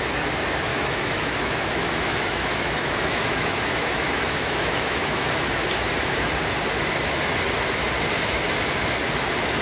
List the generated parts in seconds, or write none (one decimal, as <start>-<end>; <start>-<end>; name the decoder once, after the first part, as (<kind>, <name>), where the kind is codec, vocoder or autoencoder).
0.7-5.3 (autoencoder, DAC-VAE)